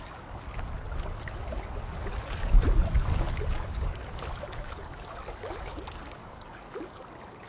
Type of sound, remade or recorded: remade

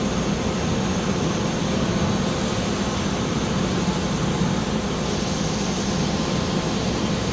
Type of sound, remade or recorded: recorded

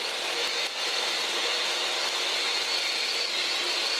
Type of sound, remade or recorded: recorded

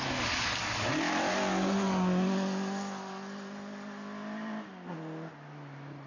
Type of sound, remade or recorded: recorded